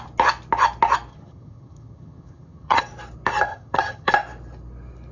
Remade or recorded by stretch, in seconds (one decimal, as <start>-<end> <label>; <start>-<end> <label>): 0.0-1.1 recorded; 1.1-2.8 remade; 2.8-3.5 recorded; 3.5-4.1 remade; 4.1-5.1 recorded